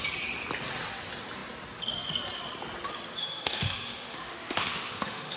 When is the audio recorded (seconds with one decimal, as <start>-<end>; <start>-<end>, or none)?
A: 0.0-3.2